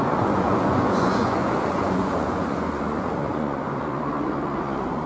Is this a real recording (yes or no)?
no